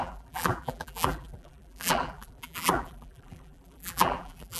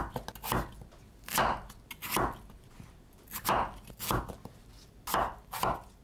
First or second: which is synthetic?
first